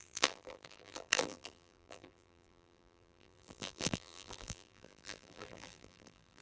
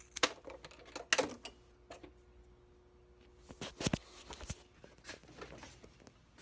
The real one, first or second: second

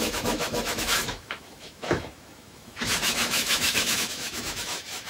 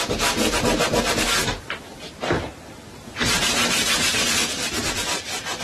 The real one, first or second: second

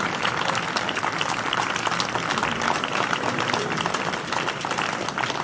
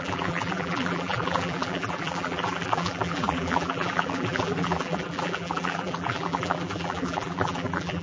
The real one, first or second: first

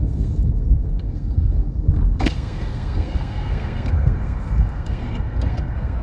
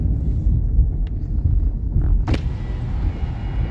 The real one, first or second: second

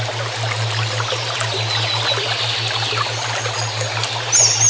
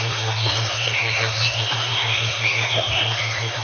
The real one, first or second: first